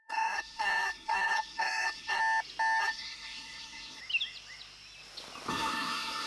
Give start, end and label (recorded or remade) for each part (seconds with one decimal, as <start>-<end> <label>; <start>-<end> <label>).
0.0-2.2 remade; 2.2-2.8 recorded; 2.8-4.0 remade; 4.0-5.5 recorded; 5.5-6.3 remade